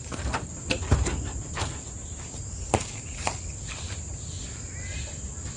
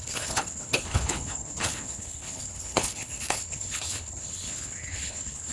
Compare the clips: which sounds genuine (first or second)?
first